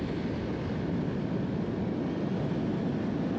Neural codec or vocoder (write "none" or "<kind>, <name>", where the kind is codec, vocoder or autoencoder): none